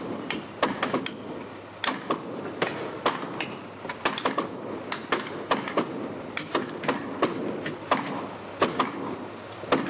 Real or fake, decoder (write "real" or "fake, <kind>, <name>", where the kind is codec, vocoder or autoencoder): real